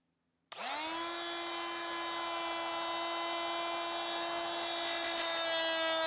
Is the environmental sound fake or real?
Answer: real